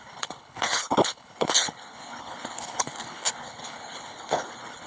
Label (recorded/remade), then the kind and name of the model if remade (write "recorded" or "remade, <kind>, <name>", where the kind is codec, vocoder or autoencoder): remade, codec, HILCodec